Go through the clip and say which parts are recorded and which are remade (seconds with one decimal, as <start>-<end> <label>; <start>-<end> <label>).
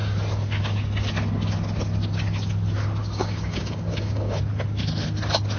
0.0-3.0 recorded; 3.0-4.4 remade; 4.4-5.6 recorded